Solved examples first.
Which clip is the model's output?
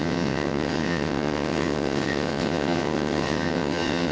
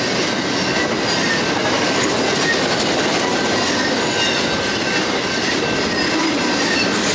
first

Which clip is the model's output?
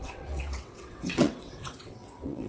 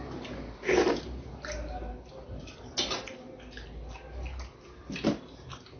first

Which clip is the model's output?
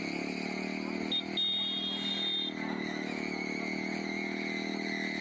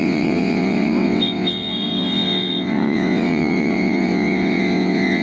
second